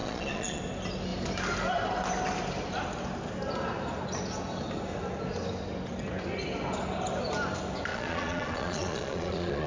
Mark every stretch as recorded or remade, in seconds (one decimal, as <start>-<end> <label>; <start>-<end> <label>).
0.0-0.6 remade; 0.6-7.9 recorded; 7.9-9.7 remade